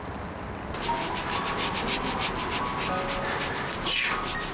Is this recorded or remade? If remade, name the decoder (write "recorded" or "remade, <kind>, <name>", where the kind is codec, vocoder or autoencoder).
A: recorded